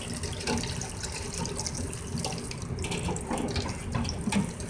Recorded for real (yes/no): yes